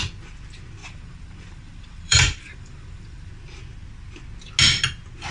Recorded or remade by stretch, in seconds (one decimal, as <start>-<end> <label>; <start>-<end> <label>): 0.0-0.8 recorded; 0.8-3.3 remade; 3.3-5.3 recorded